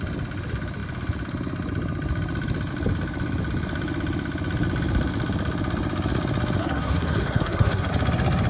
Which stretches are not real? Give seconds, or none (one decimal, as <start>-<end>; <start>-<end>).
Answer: 6.6-7.9

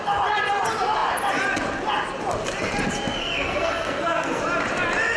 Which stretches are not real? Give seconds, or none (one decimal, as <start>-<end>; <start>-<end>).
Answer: 3.2-4.4

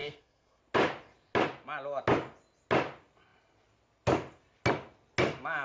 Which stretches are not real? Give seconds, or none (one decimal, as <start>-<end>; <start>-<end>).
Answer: 0.0-0.6